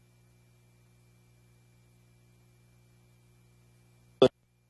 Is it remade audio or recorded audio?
recorded